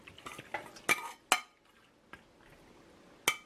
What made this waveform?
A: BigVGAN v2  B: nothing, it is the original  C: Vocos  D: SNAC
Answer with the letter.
B